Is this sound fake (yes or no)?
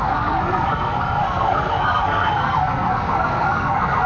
yes